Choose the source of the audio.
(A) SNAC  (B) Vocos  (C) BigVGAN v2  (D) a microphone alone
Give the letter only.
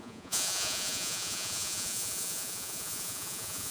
B